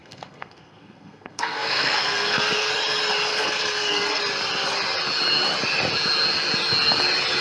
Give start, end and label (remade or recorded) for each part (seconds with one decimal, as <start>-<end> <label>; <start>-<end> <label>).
0.0-2.7 remade; 2.7-3.3 recorded; 3.3-4.2 remade; 4.2-7.4 recorded